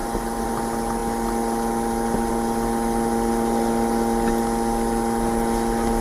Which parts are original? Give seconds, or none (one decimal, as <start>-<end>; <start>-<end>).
0.5-6.0